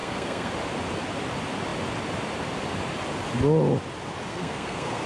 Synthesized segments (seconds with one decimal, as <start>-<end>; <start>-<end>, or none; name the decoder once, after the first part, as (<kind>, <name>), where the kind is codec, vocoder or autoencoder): 0.0-0.5 (codec, SNAC); 4.3-5.1